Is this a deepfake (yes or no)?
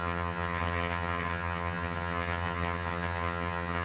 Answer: yes